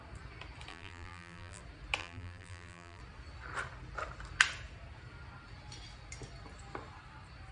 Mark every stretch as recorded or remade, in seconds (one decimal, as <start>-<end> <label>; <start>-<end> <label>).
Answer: 0.0-0.7 recorded; 0.7-1.6 remade; 1.6-2.0 recorded; 2.0-3.0 remade; 3.0-7.5 recorded